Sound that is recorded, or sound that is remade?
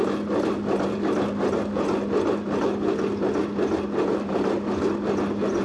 recorded